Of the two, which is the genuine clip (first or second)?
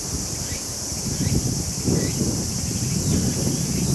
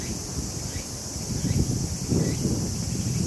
second